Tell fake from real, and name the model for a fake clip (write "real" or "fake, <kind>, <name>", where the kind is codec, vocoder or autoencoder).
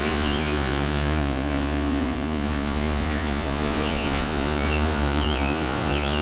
fake, vocoder, Vocos